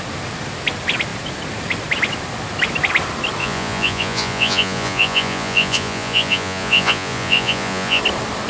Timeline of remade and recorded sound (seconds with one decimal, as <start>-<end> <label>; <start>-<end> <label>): 0.0-3.4 recorded; 3.4-8.0 remade; 8.0-8.5 recorded

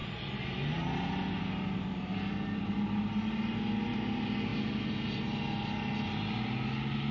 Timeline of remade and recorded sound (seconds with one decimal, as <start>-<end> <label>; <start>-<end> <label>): 0.0-7.1 recorded

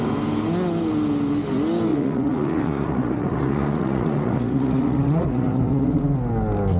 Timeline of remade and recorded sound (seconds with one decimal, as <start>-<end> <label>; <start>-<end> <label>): 0.0-1.9 recorded; 1.9-6.0 remade; 6.0-6.8 recorded